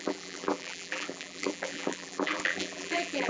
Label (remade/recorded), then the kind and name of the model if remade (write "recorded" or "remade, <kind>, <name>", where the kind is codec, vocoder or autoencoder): remade, vocoder, BigVGAN v2